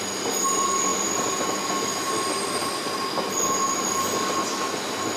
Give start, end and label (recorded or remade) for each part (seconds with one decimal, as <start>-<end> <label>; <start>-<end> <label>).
0.0-0.9 recorded; 0.9-1.5 remade; 1.5-5.2 recorded